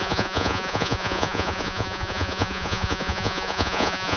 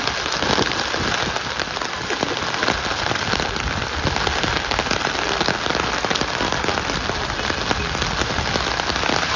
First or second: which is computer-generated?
first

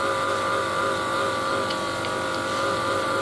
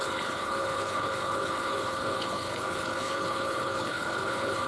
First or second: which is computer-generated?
second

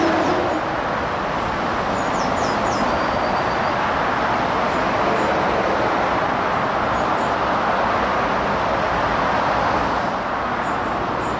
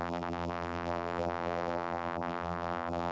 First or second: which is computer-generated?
second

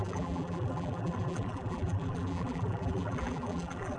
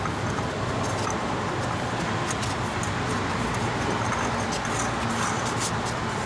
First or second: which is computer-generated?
first